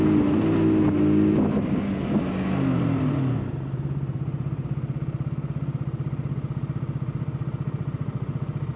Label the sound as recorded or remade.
recorded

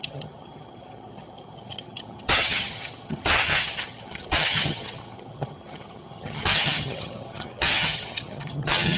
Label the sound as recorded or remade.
remade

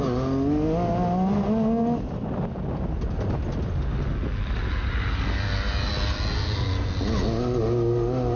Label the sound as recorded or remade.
recorded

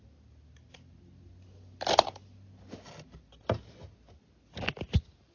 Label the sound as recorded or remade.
recorded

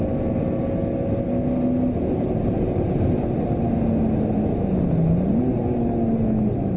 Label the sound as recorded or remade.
recorded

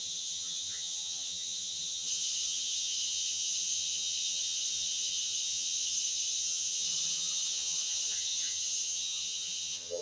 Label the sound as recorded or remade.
remade